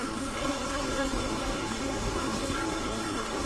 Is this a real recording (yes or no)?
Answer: no